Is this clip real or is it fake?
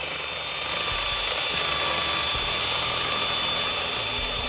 real